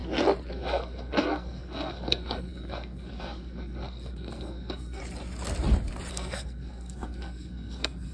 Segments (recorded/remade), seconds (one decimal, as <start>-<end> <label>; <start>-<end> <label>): 0.0-0.5 recorded; 0.5-5.0 remade; 5.0-6.1 recorded; 6.1-8.1 remade